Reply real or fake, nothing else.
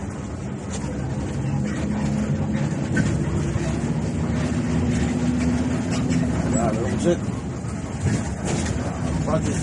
real